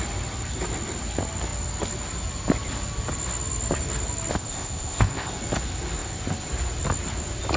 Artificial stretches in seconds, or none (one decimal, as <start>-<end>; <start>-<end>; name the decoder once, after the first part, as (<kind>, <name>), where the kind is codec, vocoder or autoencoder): 4.3-5.3 (codec, ZipCodec)